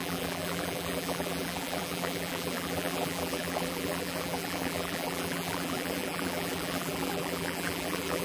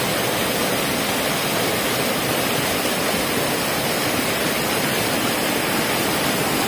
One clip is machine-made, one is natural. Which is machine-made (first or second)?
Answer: first